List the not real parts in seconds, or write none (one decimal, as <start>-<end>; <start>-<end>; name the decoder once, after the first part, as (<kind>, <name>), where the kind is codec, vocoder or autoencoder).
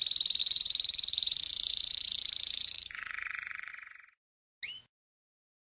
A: 0.4-3.7 (vocoder, Vocos)